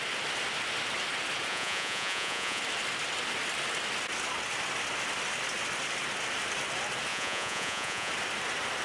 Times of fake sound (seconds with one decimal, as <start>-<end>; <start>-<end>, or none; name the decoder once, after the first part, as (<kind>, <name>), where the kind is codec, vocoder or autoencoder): 1.5-2.6 (vocoder, Vocos); 7.1-8.1